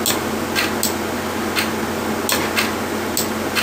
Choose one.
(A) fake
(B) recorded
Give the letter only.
B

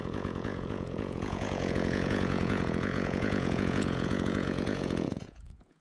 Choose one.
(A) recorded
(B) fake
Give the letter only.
B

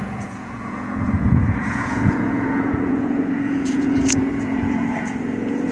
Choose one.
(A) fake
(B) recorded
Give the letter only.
A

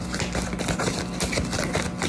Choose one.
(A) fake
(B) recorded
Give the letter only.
B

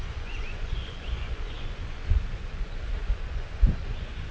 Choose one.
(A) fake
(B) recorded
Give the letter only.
A